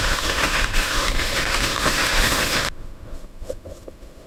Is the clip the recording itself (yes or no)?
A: no